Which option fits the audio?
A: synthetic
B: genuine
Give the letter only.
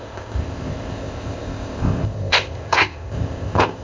A